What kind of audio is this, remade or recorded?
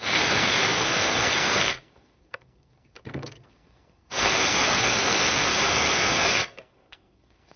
remade